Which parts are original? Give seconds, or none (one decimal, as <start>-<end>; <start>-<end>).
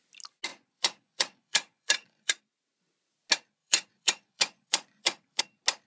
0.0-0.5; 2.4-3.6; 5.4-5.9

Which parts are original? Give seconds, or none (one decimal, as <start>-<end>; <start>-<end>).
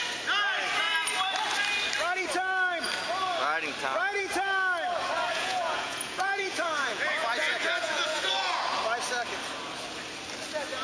0.0-5.3; 8.3-10.8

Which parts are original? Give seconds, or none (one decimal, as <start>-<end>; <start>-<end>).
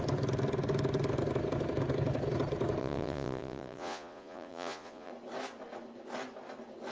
0.0-2.8; 5.1-6.9